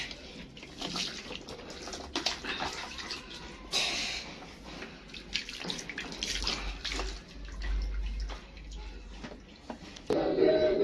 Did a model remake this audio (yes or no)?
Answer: no